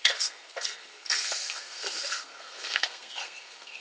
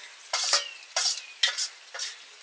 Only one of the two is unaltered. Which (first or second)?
second